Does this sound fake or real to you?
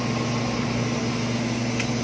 real